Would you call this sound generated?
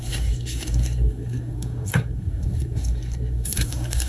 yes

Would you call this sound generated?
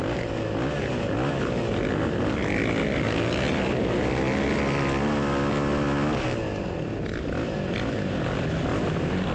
no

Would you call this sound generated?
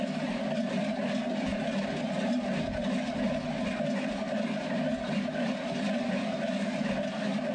no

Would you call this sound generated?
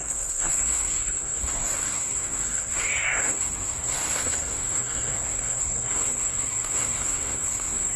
yes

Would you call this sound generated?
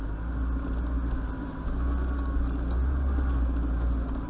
no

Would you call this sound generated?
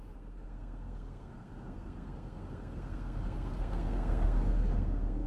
yes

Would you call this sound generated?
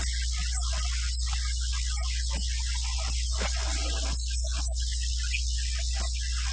no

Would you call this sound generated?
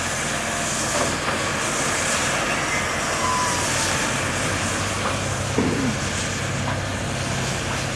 no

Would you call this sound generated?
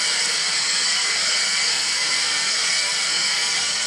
yes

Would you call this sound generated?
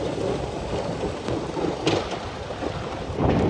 no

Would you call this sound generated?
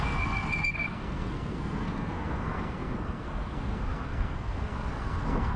yes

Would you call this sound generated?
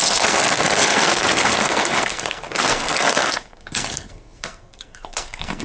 yes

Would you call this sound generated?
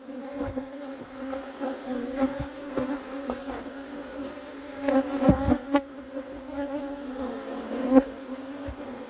yes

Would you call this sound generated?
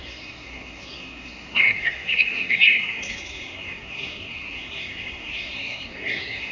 yes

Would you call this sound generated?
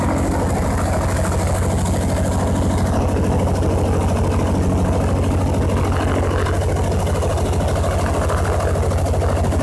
no